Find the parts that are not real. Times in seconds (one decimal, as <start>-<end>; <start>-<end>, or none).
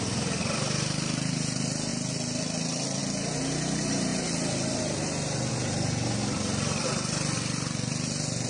none